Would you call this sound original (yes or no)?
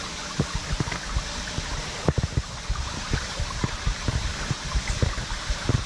yes